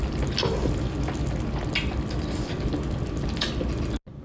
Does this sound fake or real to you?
real